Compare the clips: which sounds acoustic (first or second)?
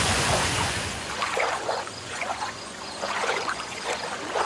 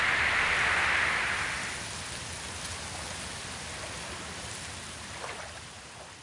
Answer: second